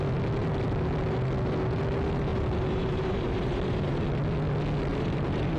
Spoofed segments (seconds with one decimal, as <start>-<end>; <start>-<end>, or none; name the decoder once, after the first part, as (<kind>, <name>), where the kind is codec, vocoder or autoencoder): 2.3-4.0 (vocoder, BigVGAN v2); 4.9-5.6